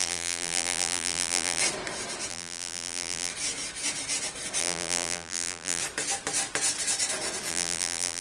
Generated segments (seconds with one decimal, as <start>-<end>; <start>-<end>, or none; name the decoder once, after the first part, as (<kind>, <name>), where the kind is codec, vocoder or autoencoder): 0.0-1.6 (vocoder, BigVGAN v2); 2.3-3.3; 4.6-5.8; 7.5-8.2